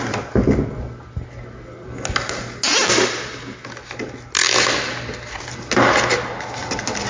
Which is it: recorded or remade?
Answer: recorded